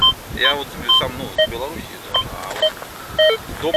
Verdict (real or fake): real